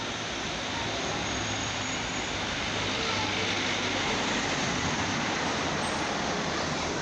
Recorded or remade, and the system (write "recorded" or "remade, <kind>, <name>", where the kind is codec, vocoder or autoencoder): recorded